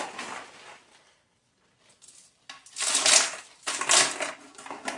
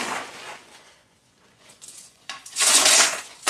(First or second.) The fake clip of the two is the second